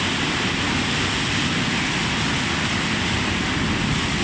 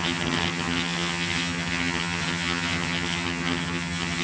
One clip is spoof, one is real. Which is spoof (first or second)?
second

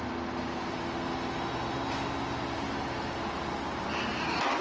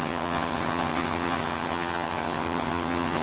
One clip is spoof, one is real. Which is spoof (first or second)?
second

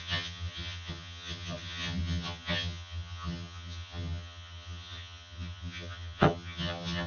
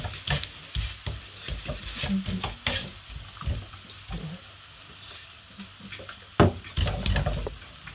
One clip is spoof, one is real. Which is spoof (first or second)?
first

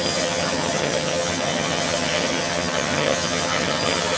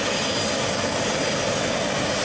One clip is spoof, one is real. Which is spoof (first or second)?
first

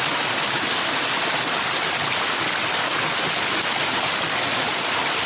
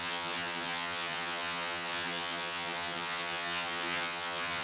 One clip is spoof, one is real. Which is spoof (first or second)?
second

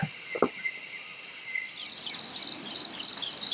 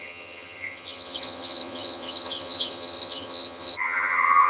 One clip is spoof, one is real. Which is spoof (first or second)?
second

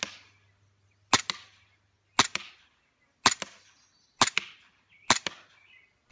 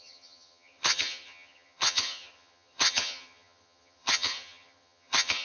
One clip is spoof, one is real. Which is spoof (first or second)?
second